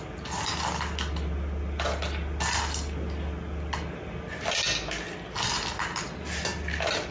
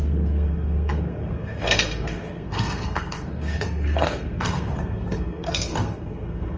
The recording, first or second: first